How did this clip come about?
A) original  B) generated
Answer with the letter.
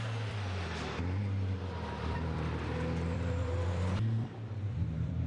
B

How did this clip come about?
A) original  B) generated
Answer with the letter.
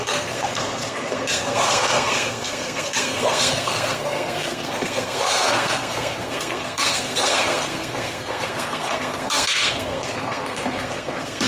B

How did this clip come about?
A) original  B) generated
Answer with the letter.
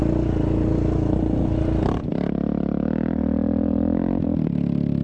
A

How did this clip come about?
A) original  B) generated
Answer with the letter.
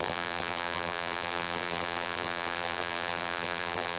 B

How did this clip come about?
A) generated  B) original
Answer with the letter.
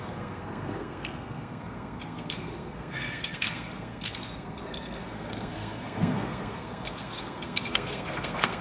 A